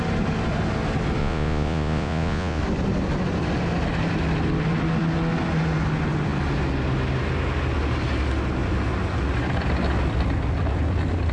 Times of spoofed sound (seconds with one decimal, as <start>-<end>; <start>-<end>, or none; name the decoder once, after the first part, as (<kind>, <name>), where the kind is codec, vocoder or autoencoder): 1.2-2.6 (vocoder, Vocos)